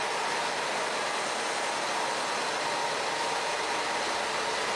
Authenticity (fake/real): real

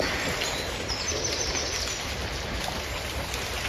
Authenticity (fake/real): real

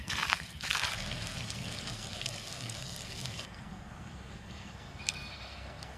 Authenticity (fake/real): fake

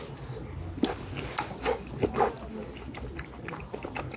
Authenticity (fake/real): real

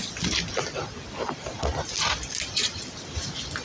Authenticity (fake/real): real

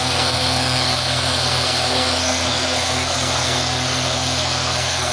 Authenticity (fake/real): fake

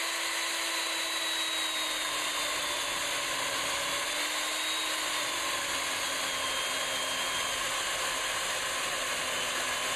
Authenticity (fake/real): real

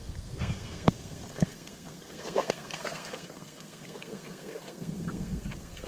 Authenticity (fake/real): fake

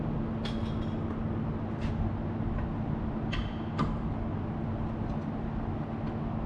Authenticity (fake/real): real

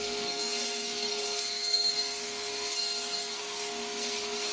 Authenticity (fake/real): fake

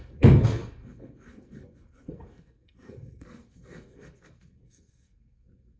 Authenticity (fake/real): fake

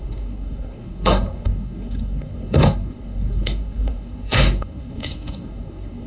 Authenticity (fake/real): fake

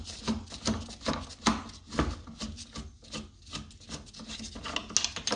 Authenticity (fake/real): real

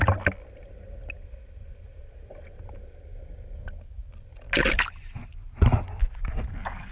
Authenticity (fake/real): real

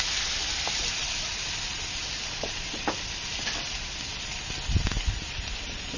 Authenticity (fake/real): real